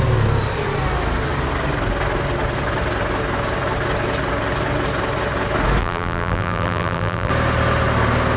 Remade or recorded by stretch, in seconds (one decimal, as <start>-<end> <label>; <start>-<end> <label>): 0.0-5.8 recorded; 5.8-7.3 remade; 7.3-8.4 recorded